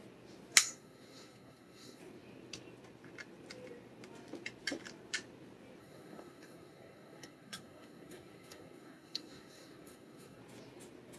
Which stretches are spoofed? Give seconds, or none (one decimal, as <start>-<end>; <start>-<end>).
0.6-2.0; 5.8-10.4